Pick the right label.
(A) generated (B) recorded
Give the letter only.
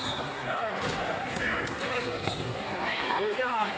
A